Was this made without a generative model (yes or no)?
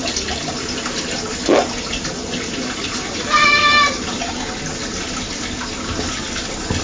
yes